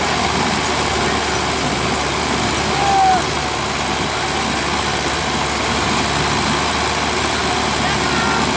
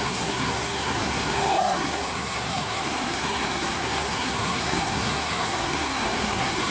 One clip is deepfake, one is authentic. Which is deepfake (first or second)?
second